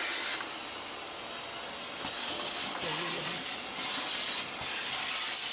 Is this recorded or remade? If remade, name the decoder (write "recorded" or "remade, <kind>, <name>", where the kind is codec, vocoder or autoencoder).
recorded